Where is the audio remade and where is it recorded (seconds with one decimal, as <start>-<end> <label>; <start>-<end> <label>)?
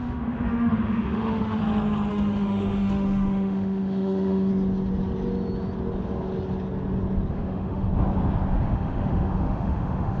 0.0-1.6 remade; 1.6-2.1 recorded; 2.1-4.5 remade; 4.5-7.3 recorded; 7.3-7.9 remade; 7.9-8.6 recorded; 8.6-10.2 remade